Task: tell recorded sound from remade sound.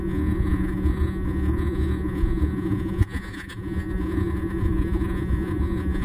remade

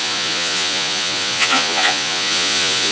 remade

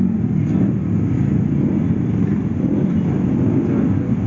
recorded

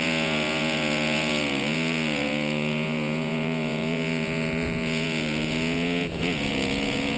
remade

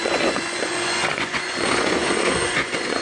remade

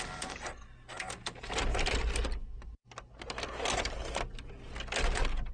recorded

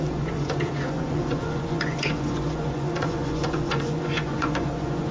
remade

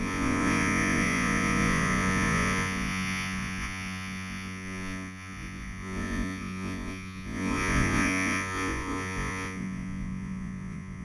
remade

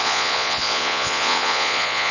remade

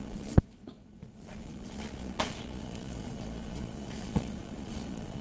remade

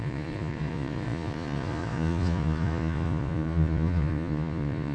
remade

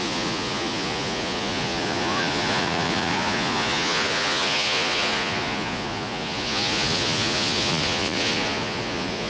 remade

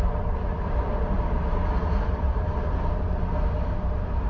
recorded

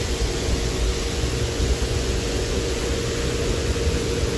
remade